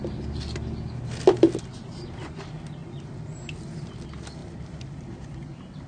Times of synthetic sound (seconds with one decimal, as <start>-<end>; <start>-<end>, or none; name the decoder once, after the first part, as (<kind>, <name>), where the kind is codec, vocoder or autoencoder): 4.4-5.2 (vocoder, BigVGAN v2)